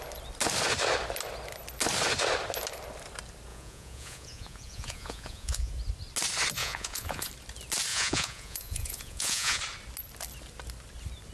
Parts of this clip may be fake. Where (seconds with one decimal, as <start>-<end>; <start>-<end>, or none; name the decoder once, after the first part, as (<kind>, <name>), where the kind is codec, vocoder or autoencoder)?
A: 3.5-5.7 (vocoder, Vocos); 6.6-7.3; 7.9-9.6